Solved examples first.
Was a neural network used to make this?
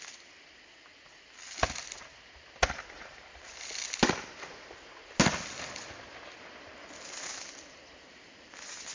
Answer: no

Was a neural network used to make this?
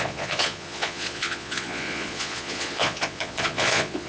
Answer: yes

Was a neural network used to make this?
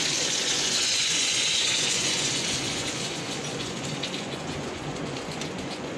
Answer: yes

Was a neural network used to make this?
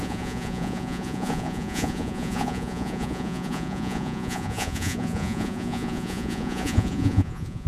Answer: yes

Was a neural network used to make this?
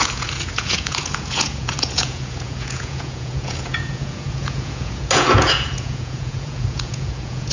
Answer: yes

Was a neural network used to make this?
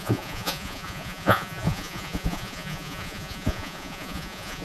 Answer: yes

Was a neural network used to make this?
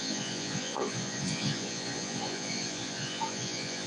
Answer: yes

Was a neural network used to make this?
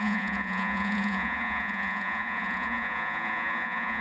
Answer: yes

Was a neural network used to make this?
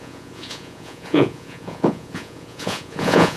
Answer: yes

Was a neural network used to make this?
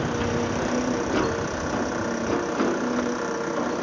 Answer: no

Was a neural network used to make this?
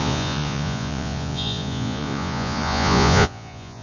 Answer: yes